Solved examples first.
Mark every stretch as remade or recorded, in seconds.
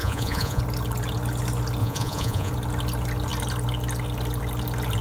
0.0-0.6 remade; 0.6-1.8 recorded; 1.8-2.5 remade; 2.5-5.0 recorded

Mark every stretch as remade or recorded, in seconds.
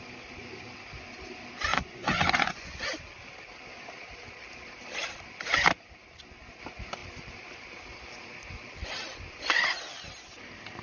0.0-1.7 recorded; 1.7-2.7 remade; 2.7-10.8 recorded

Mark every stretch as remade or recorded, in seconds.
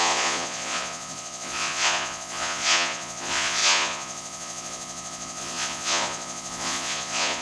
0.0-7.4 remade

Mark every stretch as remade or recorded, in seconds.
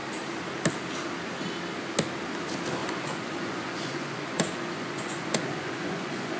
0.0-2.8 recorded; 2.8-6.4 remade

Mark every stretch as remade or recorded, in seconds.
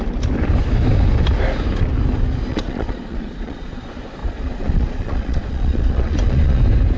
0.0-2.5 recorded; 2.5-3.8 remade; 3.8-4.2 recorded; 4.2-6.6 remade; 6.6-7.0 recorded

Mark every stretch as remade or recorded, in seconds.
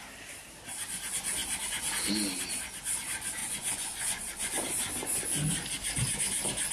0.0-3.4 recorded; 3.4-4.5 remade; 4.5-6.7 recorded